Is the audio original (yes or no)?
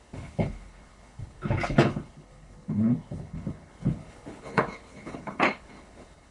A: no